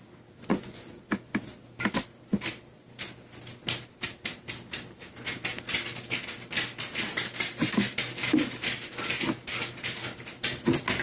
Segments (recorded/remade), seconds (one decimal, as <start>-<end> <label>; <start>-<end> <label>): 0.0-0.5 recorded; 0.5-1.0 remade; 1.0-11.0 recorded